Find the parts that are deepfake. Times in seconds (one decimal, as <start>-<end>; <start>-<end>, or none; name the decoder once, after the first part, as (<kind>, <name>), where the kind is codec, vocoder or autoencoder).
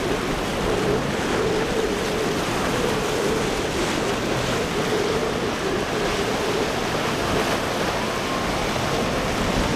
none